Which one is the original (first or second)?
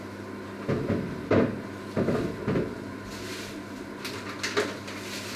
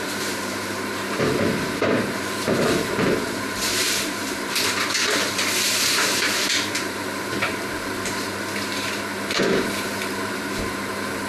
first